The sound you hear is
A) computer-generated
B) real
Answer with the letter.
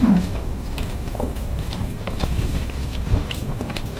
A